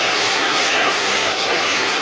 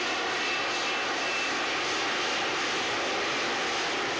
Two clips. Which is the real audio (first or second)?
second